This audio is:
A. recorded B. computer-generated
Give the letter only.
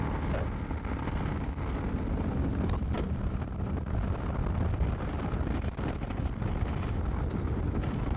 A